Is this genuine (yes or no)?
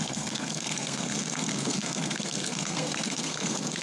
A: no